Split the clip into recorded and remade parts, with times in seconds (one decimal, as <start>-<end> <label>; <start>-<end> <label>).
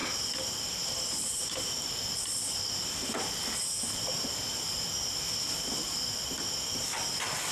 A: 0.0-3.3 remade; 3.3-7.5 recorded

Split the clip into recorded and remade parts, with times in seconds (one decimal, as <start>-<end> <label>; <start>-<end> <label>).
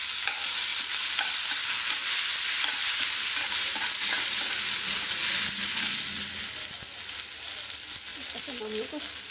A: 0.0-0.7 recorded; 0.7-4.6 remade; 4.6-5.2 recorded; 5.2-5.7 remade; 5.7-9.3 recorded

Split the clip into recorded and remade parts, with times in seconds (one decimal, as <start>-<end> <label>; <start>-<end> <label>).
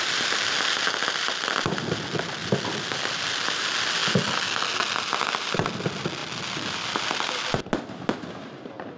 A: 0.0-4.0 remade; 4.0-5.0 recorded; 5.0-9.0 remade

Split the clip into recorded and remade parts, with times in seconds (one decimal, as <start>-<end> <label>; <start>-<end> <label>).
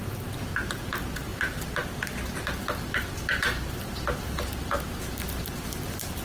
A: 0.0-6.2 recorded